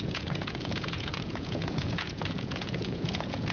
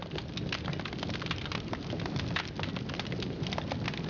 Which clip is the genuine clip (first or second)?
second